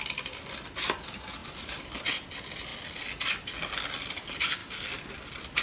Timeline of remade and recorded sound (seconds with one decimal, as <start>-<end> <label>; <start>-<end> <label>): 0.0-5.6 recorded